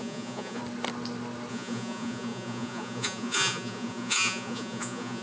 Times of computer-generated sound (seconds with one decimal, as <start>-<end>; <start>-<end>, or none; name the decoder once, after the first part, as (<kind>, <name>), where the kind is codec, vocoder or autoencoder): 0.0-0.6 (vocoder, Vocos); 1.5-5.2